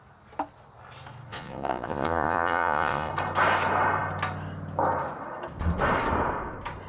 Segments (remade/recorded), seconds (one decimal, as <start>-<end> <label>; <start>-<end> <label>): 0.0-1.3 recorded; 1.3-3.1 remade; 3.1-6.9 recorded